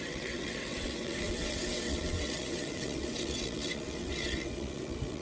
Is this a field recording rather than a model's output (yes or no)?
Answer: no